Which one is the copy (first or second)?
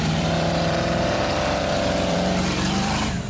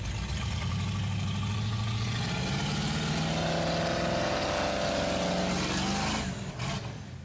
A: first